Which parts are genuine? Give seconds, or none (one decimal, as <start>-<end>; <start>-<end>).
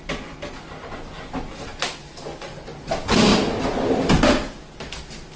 0.0-5.4